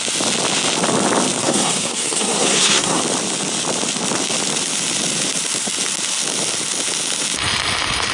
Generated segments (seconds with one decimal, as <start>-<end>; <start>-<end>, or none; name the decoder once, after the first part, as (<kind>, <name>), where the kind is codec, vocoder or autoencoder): 1.4-3.0 (codec, SNAC)